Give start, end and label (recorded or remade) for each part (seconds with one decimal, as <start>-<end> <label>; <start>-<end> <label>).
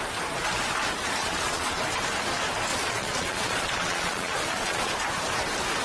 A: 0.0-1.2 recorded; 1.2-1.8 remade; 1.8-2.7 recorded; 2.7-4.9 remade; 4.9-5.8 recorded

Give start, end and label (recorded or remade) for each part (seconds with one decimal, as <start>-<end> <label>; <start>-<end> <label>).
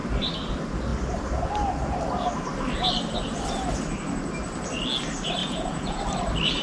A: 0.0-5.4 recorded; 5.4-6.0 remade; 6.0-6.6 recorded